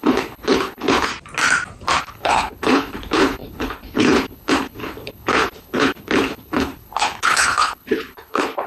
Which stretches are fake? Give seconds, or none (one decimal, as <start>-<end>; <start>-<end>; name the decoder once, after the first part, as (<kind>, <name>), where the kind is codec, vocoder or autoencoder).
0.0-1.1 (codec, HILCodec); 2.0-8.7